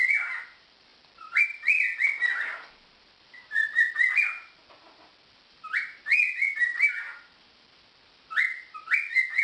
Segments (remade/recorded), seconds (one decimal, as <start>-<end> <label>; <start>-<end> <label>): 0.0-9.4 recorded